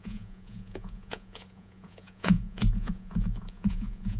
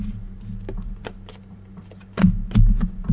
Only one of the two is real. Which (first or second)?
second